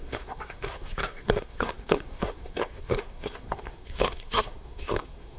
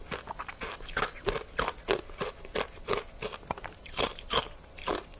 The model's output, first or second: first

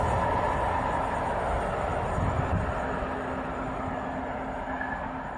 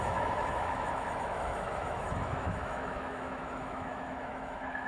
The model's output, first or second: second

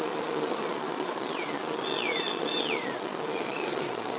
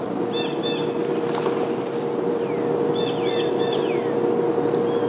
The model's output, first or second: first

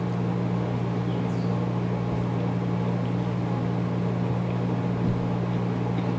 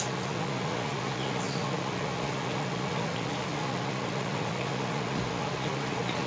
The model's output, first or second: second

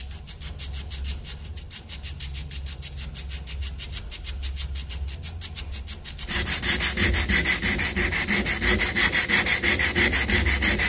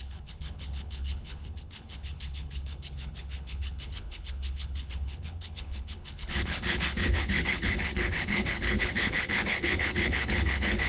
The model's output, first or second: second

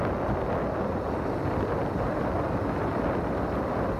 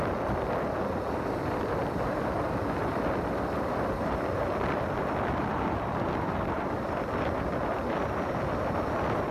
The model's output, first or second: second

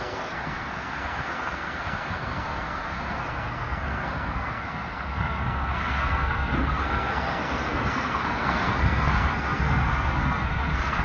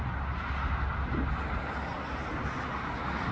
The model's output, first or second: first